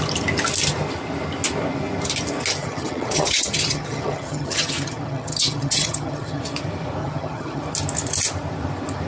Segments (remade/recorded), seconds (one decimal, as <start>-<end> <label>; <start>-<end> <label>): 0.0-2.6 recorded; 2.6-6.4 remade; 6.4-7.0 recorded; 7.0-7.6 remade; 7.6-9.1 recorded